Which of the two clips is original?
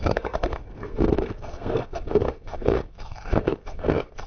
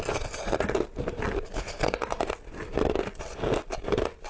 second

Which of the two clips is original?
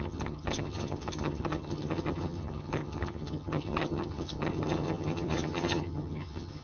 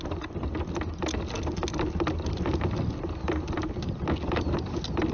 second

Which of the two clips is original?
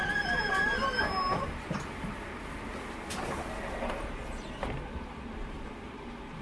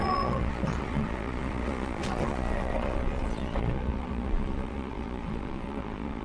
first